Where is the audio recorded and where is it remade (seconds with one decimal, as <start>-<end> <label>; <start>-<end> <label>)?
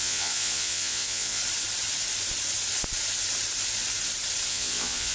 0.0-1.4 remade; 1.4-4.5 recorded; 4.5-5.1 remade